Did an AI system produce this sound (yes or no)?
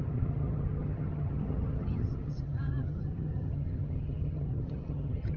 yes